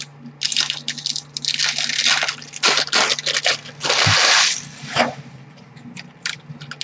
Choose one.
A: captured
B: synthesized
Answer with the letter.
A